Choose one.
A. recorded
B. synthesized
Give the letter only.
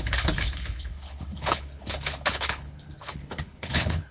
B